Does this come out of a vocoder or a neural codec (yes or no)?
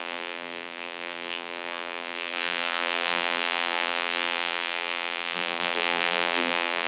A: yes